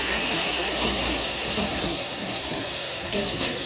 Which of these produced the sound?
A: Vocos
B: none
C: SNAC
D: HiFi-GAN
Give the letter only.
C